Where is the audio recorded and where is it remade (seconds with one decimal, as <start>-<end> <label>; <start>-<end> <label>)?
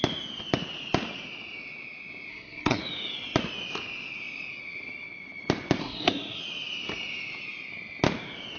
0.0-2.3 recorded; 2.3-2.8 remade; 2.8-5.8 recorded; 5.8-6.4 remade; 6.4-8.6 recorded